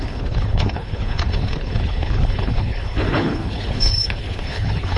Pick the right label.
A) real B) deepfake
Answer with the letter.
B